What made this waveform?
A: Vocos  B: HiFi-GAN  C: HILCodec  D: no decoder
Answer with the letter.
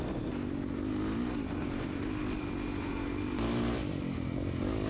D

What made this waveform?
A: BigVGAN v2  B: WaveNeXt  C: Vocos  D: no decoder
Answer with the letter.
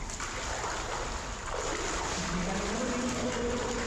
D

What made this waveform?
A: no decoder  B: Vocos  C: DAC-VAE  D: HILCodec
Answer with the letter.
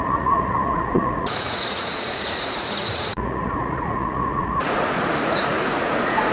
B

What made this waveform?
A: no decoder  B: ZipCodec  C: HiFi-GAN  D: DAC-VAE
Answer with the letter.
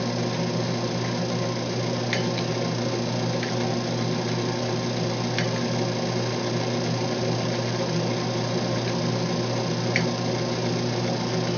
A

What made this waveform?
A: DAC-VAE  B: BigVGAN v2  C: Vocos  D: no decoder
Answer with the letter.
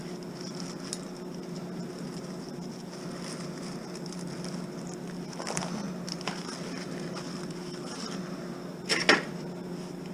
D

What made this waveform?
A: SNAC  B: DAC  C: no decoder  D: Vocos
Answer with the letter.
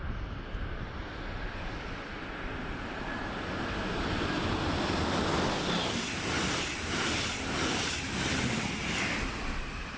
C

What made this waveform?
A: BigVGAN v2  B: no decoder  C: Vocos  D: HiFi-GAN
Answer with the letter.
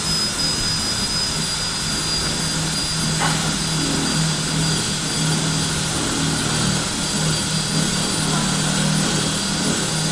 B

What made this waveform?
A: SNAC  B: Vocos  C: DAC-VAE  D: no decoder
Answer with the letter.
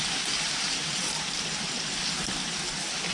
D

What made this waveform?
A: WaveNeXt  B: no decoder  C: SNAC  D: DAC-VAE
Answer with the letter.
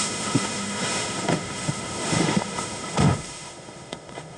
D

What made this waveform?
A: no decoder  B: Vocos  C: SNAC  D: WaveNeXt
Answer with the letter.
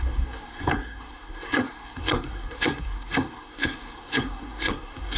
C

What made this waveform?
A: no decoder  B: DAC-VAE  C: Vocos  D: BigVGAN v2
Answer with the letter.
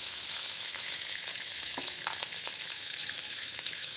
B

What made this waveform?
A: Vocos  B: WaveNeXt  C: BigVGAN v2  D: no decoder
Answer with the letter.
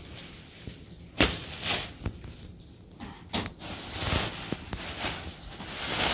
D